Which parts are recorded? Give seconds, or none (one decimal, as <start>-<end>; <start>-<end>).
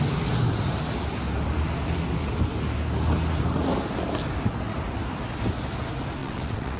0.0-6.2